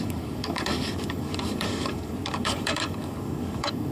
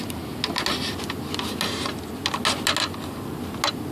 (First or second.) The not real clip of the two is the first